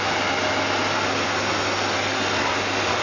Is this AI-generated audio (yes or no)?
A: no